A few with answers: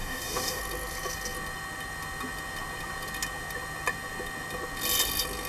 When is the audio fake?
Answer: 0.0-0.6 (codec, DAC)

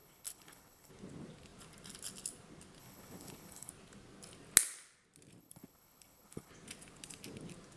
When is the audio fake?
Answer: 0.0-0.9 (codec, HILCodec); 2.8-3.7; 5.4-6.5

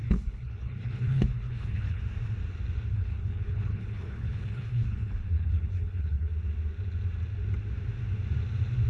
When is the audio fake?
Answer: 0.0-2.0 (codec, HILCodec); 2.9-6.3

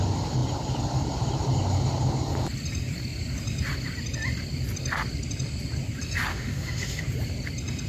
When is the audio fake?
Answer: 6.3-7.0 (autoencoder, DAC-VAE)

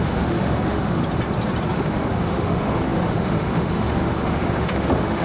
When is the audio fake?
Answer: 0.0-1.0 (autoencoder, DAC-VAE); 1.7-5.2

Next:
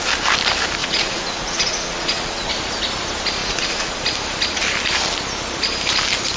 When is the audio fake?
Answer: 0.8-2.5 (vocoder, Vocos); 3.4-4.0

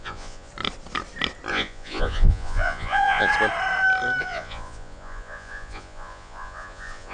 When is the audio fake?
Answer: 0.0-0.5 (vocoder, Vocos); 1.5-3.3; 4.2-7.1